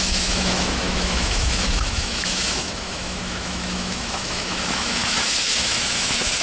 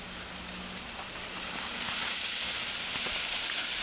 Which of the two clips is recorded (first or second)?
second